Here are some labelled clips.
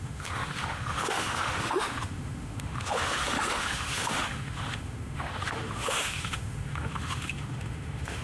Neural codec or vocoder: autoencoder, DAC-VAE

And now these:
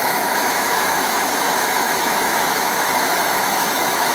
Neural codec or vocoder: autoencoder, DAC-VAE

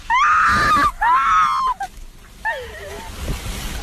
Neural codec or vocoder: none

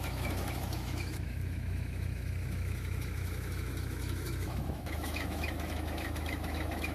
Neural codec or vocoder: autoencoder, DAC-VAE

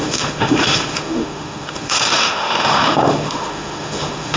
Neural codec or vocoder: autoencoder, DAC-VAE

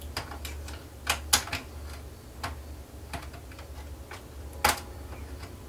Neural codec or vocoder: none